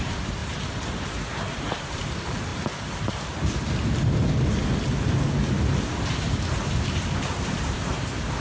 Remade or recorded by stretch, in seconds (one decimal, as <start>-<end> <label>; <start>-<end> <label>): 0.0-0.4 remade; 0.4-1.5 recorded; 1.5-2.5 remade; 2.5-5.9 recorded; 5.9-8.4 remade